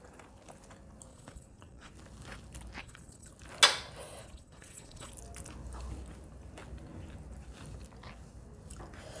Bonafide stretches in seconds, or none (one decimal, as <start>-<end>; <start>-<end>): 0.0-1.1; 1.9-2.8; 3.3-4.2; 5.1-9.2